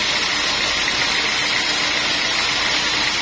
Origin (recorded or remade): recorded